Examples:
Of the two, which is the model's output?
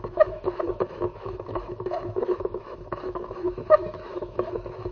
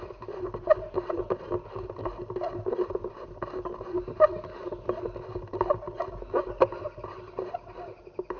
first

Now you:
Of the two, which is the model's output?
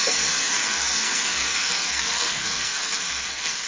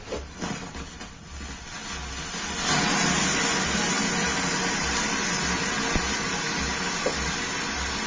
first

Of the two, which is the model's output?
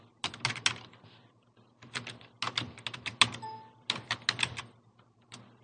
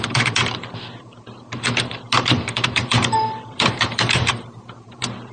second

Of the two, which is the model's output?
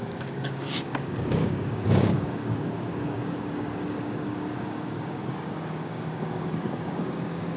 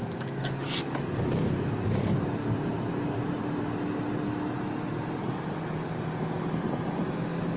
first